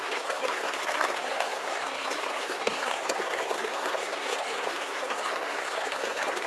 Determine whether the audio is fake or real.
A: fake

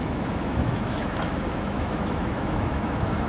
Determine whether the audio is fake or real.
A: fake